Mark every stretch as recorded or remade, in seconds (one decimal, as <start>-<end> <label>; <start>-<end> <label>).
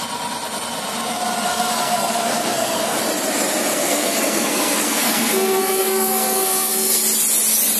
0.0-1.5 recorded; 1.5-3.0 remade; 3.0-3.7 recorded; 3.7-7.0 remade; 7.0-7.8 recorded